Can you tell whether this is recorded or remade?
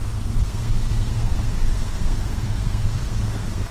remade